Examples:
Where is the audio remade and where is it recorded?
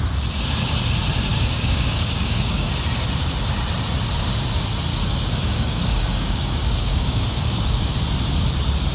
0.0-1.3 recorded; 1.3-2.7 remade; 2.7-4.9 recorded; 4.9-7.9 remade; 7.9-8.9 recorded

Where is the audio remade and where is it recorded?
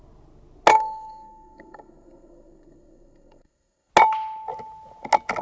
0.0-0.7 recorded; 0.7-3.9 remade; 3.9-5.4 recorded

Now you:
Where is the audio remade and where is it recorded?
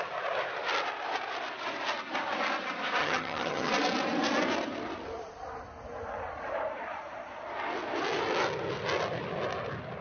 0.0-3.0 recorded; 3.0-3.7 remade; 3.7-10.0 recorded